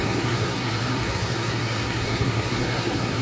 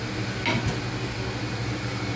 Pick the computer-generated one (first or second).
first